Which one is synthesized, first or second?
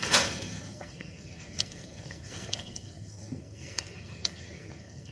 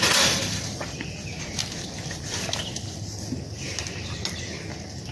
first